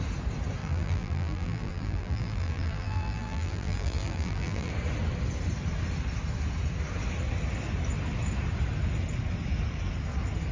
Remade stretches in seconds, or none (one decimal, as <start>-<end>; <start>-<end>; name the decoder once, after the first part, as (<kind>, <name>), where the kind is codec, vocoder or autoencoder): 0.6-4.7 (vocoder, BigVGAN v2)